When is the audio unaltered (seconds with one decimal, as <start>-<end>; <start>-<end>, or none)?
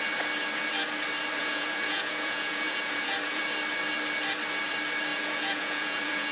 0.0-1.4; 3.4-5.1